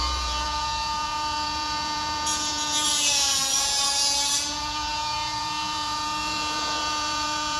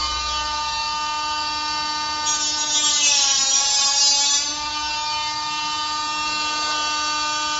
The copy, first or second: first